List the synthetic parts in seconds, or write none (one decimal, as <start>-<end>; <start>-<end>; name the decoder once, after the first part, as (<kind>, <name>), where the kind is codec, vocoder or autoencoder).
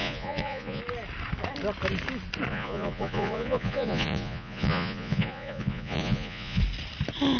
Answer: 0.0-0.8 (vocoder, Vocos); 2.5-6.6